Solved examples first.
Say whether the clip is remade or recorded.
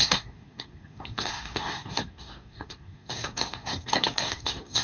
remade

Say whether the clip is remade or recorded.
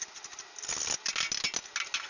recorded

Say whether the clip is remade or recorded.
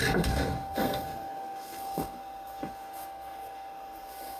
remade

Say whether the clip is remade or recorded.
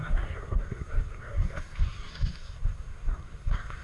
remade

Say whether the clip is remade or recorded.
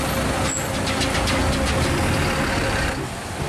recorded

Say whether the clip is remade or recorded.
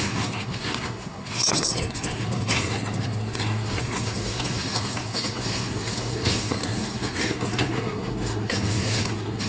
remade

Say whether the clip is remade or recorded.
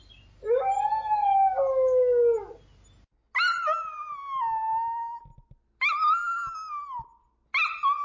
recorded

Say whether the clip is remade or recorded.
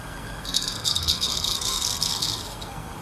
remade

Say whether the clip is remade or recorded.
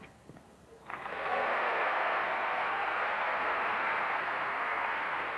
remade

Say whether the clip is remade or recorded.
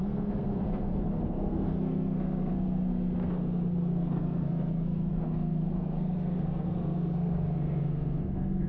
remade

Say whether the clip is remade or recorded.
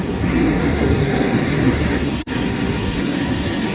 remade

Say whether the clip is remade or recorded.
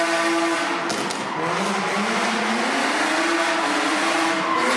recorded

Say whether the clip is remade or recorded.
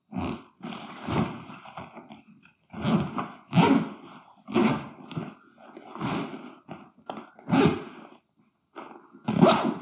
recorded